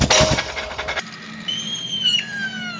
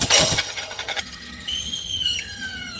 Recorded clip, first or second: first